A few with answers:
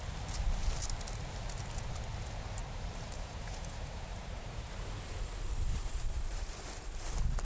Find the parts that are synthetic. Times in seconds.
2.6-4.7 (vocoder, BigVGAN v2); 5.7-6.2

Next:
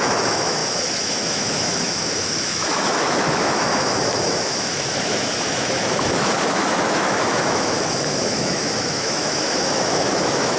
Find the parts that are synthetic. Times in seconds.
0.0-10.6 (autoencoder, DAC-VAE)

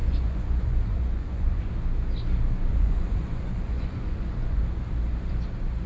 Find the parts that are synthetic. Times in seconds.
0.0-1.7 (vocoder, Vocos); 2.7-4.6

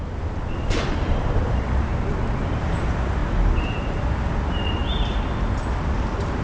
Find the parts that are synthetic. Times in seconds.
0.0-1.9 (vocoder, BigVGAN v2); 2.6-4.8; 5.7-6.4

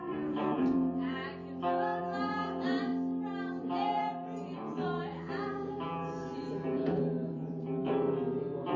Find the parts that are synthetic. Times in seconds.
0.0-1.3 (vocoder, Vocos); 2.0-2.9; 3.6-8.8

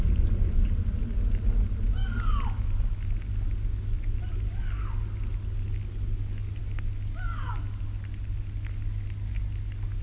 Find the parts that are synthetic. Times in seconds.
none

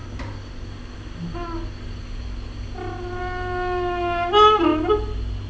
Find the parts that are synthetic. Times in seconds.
none